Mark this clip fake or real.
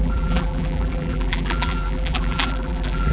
fake